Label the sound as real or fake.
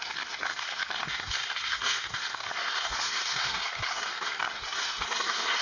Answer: fake